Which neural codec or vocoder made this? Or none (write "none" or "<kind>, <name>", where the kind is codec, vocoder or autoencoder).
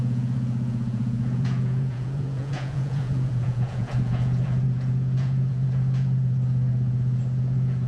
vocoder, Vocos